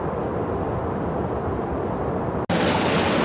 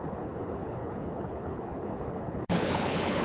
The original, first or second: first